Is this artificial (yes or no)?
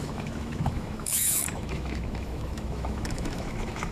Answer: yes